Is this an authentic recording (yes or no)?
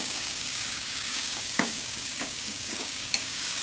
no